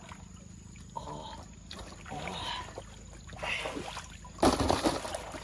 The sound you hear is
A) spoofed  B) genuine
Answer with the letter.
B